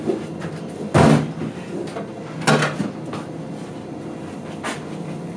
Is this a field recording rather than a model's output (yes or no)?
yes